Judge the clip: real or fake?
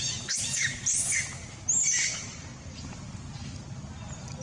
real